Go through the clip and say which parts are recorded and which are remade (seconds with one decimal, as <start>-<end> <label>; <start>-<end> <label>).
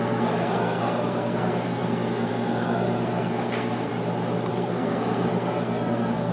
0.0-3.9 remade; 3.9-4.5 recorded; 4.5-6.3 remade